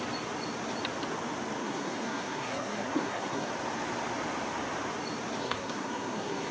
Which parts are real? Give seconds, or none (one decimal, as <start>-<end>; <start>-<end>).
0.0-1.6; 3.5-5.4